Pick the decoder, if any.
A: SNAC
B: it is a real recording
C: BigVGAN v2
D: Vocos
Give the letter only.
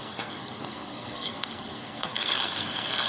A